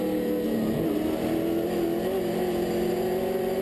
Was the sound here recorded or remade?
recorded